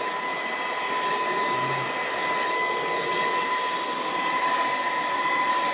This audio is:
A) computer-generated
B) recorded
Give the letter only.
B